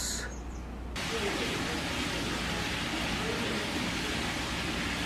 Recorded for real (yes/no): yes